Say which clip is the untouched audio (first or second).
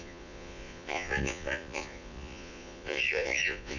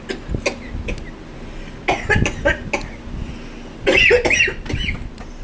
second